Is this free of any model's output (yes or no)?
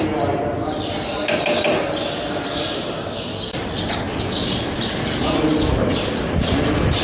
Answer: yes